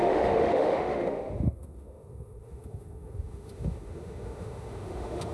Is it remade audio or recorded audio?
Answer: remade